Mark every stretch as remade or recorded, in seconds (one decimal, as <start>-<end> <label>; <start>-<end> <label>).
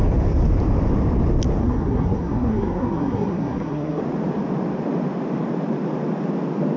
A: 0.0-1.6 recorded; 1.6-4.0 remade; 4.0-6.8 recorded